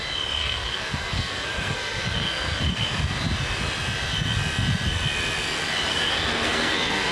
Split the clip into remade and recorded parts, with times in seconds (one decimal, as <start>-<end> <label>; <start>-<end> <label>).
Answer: 0.0-0.4 recorded; 0.4-3.0 remade; 3.0-5.9 recorded; 5.9-7.1 remade